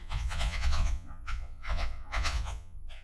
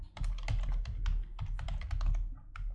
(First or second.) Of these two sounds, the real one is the second